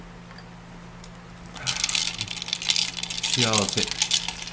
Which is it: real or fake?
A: real